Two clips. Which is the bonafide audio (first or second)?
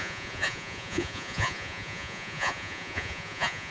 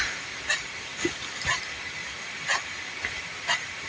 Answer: second